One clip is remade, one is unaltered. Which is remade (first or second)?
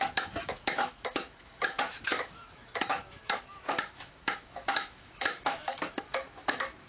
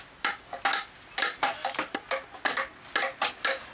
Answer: first